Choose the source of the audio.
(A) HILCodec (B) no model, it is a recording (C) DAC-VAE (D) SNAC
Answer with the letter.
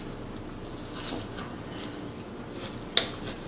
B